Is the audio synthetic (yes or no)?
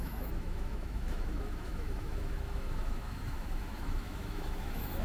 yes